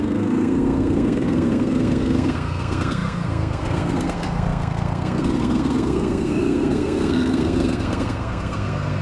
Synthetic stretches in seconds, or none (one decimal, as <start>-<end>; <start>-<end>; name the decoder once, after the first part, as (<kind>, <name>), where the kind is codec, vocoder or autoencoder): 0.0-9.0 (codec, SNAC)